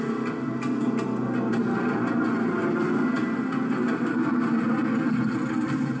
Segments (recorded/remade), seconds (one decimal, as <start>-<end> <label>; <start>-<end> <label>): 0.0-6.0 recorded